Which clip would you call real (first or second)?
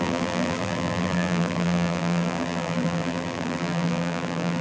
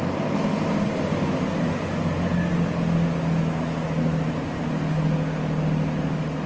second